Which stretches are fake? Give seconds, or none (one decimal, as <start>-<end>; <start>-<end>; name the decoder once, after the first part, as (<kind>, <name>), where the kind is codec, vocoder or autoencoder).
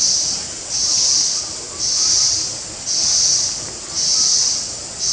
none